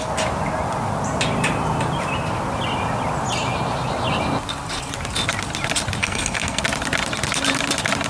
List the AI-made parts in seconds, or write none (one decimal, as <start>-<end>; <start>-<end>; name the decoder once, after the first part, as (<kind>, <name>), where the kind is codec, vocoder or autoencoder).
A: 6.0-6.6 (codec, SNAC)